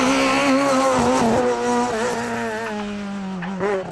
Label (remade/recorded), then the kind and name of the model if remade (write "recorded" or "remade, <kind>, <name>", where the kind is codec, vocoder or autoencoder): recorded